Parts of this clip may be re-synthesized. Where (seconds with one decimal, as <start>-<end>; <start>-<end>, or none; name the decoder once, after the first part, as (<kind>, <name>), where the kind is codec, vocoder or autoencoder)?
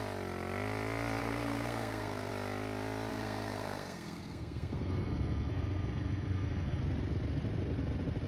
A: 1.2-2.3 (codec, SNAC); 3.1-6.8